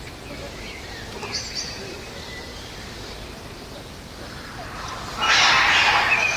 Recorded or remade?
recorded